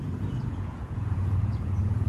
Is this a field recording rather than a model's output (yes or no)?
no